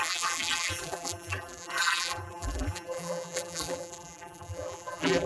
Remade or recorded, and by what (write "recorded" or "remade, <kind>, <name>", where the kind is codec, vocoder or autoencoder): remade, vocoder, BigVGAN v2